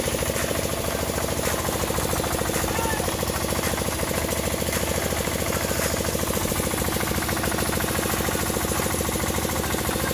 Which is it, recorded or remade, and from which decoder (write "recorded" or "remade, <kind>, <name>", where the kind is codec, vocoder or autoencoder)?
recorded